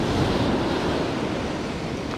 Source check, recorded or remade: recorded